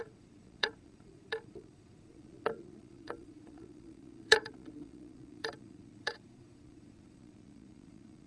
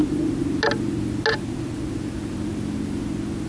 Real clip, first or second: second